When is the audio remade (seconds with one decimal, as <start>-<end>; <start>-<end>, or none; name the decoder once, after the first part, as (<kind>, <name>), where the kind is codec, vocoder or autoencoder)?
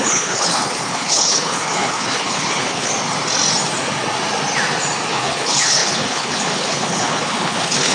0.0-2.9 (codec, HILCodec); 5.1-7.9